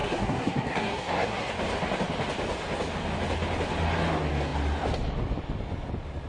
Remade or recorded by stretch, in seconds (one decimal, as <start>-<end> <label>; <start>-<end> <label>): 0.0-1.5 remade; 1.5-6.3 recorded